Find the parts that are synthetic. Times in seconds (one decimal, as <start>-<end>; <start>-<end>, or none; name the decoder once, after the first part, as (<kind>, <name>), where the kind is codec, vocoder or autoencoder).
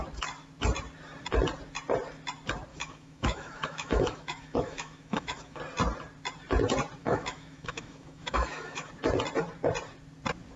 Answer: 2.7-5.6 (autoencoder, DAC-VAE); 7.0-8.9